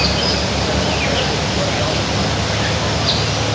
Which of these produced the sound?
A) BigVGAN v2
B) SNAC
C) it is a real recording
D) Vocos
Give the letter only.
C